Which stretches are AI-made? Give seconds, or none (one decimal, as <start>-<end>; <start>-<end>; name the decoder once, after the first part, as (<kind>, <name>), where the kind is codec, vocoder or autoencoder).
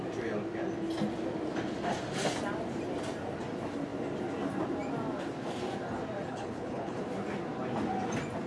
6.3-7.0 (codec, HILCodec)